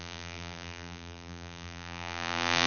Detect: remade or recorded remade